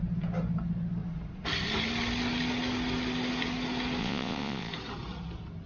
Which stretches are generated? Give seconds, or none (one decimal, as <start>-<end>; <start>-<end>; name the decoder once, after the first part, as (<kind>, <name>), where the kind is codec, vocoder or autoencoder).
4.0-4.7 (vocoder, Vocos)